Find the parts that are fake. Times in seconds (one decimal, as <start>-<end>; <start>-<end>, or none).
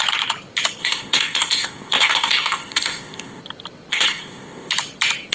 0.8-3.4; 3.9-4.7